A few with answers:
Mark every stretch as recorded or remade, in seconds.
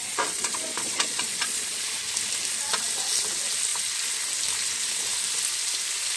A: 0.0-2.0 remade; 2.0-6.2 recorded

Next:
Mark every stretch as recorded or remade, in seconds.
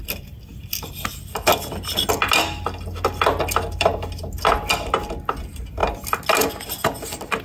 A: 0.0-7.4 recorded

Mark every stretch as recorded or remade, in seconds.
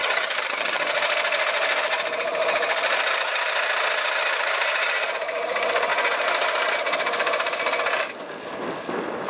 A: 0.0-0.8 remade; 0.8-9.3 recorded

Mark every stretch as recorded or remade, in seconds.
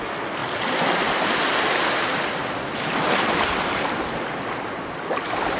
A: 0.0-5.6 recorded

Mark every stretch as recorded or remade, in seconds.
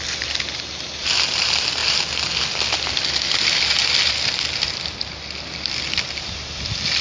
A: 0.0-7.0 recorded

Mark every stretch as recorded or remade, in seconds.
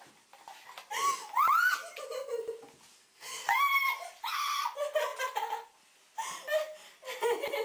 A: 0.0-3.0 recorded; 3.0-3.7 remade; 3.7-7.6 recorded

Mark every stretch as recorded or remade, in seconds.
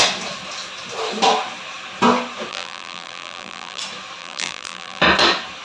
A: 0.0-2.5 recorded; 2.5-3.8 remade; 3.8-4.2 recorded; 4.2-5.0 remade; 5.0-5.6 recorded